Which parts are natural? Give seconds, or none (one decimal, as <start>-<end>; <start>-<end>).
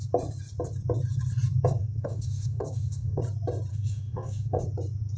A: 0.0-1.8; 3.2-3.7; 4.6-5.2